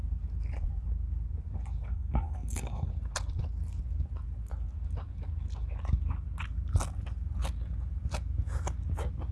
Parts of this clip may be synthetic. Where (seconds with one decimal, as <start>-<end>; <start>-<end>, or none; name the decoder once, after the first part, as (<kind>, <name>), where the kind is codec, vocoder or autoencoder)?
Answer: 1.9-2.9 (codec, SNAC)